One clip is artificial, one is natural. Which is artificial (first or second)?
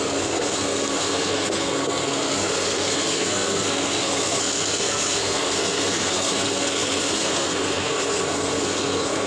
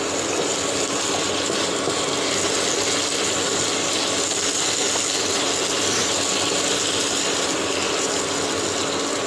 first